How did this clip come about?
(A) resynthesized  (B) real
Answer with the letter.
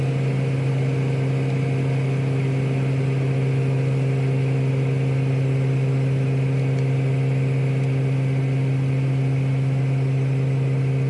B